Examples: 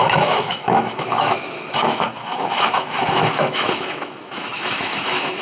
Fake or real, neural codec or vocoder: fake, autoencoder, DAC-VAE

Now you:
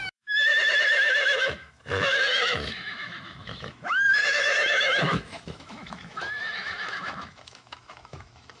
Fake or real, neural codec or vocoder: fake, autoencoder, DAC-VAE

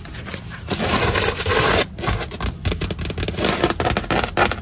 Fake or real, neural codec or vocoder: real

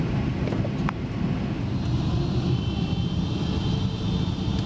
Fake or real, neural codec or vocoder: real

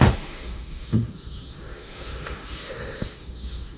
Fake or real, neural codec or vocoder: fake, autoencoder, DAC-VAE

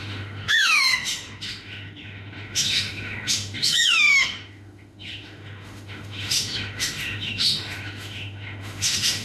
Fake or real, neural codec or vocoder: fake, autoencoder, DAC-VAE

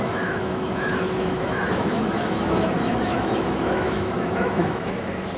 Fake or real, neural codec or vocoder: fake, autoencoder, DAC-VAE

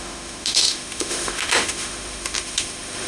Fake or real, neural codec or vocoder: fake, autoencoder, DAC-VAE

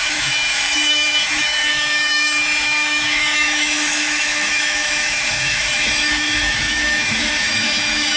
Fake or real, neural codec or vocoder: fake, autoencoder, DAC-VAE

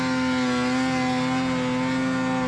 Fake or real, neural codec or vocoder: real